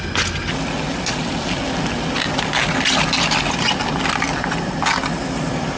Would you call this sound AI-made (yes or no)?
no